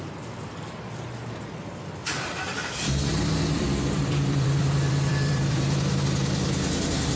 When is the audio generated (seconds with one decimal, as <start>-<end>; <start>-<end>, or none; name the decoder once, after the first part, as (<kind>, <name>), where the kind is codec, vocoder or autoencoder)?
2.0-6.0 (vocoder, BigVGAN v2)